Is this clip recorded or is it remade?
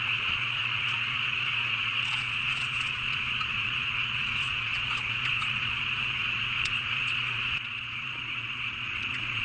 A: remade